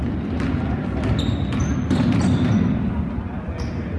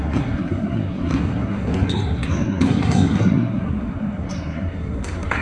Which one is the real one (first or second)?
first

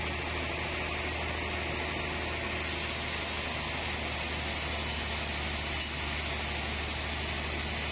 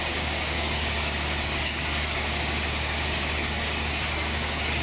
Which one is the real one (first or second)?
first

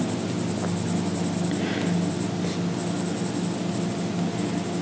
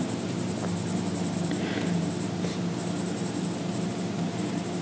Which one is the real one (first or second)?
first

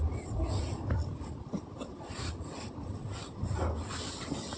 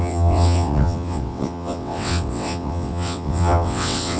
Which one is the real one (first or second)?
first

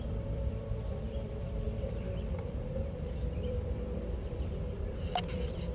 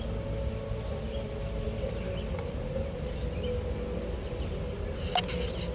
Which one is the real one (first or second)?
second